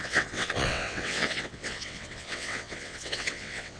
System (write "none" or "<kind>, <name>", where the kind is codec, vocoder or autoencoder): vocoder, WaveNeXt